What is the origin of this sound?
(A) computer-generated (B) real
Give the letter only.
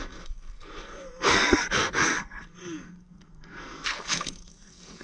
A